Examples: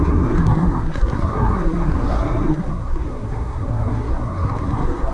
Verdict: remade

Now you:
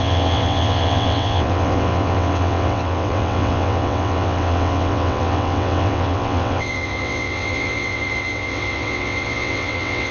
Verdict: remade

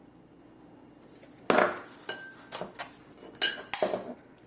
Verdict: recorded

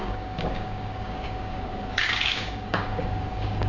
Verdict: remade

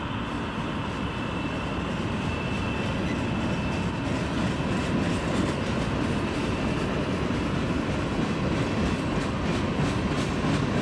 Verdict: recorded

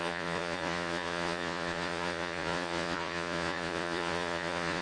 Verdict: remade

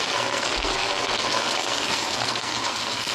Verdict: remade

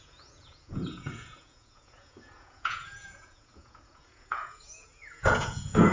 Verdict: remade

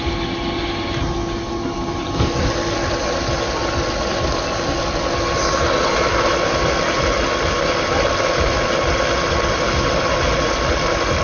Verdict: recorded